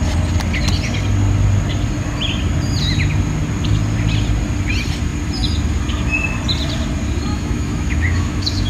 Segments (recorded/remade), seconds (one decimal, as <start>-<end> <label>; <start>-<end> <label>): 0.0-7.3 recorded; 7.3-8.7 remade